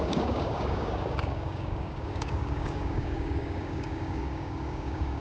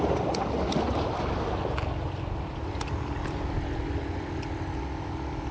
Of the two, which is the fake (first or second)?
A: first